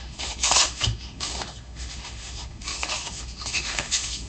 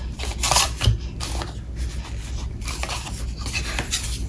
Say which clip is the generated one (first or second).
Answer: first